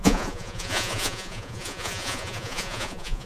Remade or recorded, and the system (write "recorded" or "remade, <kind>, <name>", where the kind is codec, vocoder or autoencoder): remade, vocoder, Vocos